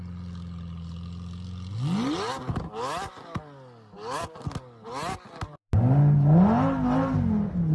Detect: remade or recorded recorded